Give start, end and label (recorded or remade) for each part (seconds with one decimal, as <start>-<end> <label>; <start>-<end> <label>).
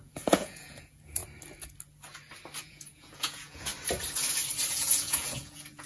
0.0-1.2 remade; 1.2-2.6 recorded; 2.6-3.7 remade; 3.7-4.7 recorded; 4.7-5.9 remade